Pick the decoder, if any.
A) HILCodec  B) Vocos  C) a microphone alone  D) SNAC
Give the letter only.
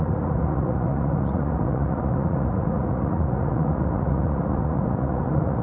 B